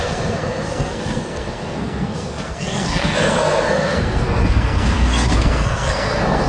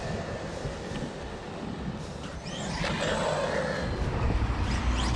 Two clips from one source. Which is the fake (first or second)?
first